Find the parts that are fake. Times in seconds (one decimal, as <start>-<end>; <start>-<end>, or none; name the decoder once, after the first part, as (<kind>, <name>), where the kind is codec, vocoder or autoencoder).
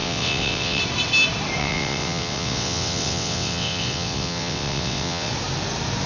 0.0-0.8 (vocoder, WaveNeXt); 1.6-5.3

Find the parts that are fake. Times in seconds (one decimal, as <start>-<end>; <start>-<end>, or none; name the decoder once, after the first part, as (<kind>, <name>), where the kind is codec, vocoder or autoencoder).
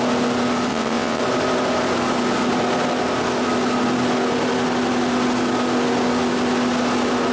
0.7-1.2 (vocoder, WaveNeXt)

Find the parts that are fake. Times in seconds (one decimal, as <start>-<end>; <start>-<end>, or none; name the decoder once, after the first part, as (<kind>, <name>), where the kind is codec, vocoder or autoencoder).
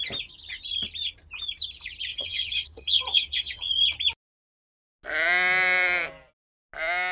2.1-3.7 (vocoder, WaveNeXt)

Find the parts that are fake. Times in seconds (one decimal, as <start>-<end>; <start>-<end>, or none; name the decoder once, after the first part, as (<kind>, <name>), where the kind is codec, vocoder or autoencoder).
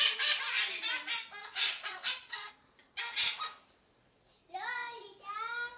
1.4-2.5 (vocoder, WaveNeXt)